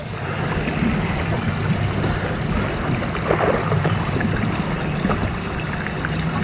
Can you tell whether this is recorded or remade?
recorded